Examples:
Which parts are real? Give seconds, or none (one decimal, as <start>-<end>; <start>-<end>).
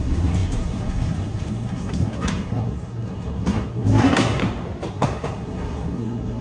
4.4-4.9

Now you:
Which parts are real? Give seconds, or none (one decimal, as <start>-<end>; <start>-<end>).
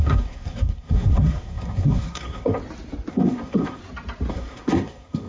2.6-3.1; 3.8-4.3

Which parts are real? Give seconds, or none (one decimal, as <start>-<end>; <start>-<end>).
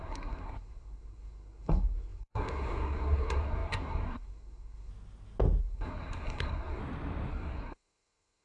4.9-5.6; 6.8-7.3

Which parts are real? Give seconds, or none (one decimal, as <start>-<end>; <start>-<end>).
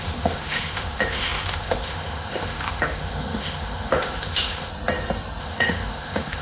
4.7-5.4